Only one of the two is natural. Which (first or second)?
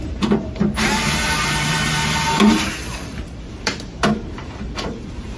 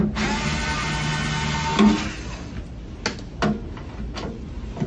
second